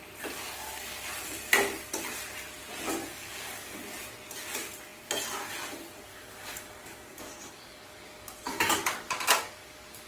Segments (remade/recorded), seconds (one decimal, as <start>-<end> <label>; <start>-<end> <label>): 0.0-3.1 recorded; 3.1-3.8 remade; 3.8-6.1 recorded; 6.1-10.1 remade